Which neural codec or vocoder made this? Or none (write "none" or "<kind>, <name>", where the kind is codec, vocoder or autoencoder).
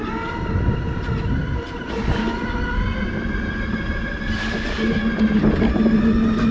none